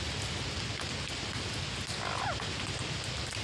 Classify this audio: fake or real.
real